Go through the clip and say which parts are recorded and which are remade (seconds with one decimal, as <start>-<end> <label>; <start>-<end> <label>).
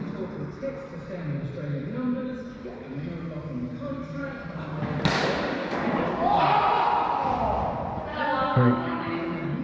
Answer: 0.0-5.6 recorded; 5.6-6.4 remade; 6.4-8.1 recorded; 8.1-9.6 remade